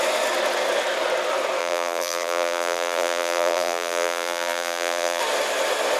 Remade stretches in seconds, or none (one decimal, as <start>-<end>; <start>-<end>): 1.6-5.2